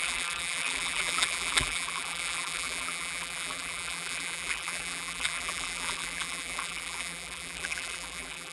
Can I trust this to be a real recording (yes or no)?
no